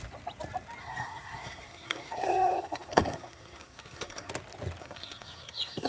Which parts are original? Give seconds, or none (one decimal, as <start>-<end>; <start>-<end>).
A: 0.0-0.8; 4.3-4.8